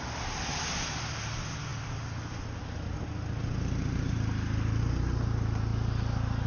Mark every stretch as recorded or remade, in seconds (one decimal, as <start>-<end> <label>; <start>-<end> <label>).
0.0-6.5 recorded